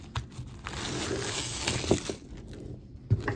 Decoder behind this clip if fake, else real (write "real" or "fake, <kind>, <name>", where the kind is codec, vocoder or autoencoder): real